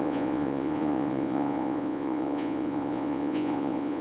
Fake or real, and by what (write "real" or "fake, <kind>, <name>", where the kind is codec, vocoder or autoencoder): fake, vocoder, Vocos